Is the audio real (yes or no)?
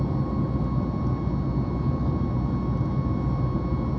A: yes